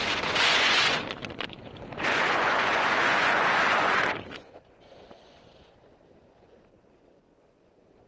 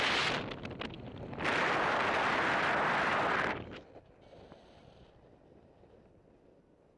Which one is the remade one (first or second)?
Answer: first